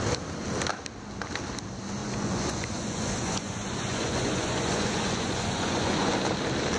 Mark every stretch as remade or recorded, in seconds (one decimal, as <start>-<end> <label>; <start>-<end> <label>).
0.0-2.0 recorded; 2.0-6.1 remade; 6.1-6.8 recorded